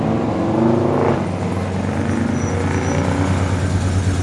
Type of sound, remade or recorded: recorded